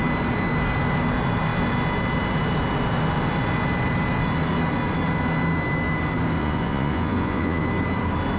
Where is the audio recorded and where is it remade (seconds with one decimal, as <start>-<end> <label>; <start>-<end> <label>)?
0.0-6.4 recorded; 6.4-7.6 remade; 7.6-8.4 recorded